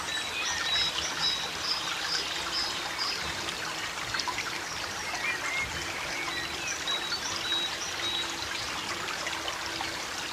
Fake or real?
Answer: real